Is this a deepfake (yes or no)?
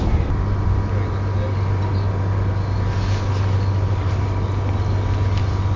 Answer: no